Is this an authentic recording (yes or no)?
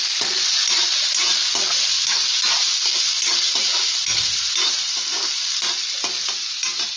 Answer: yes